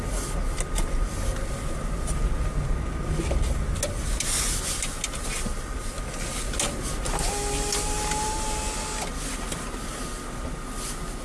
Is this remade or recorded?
recorded